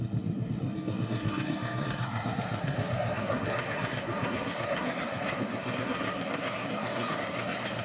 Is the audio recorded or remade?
remade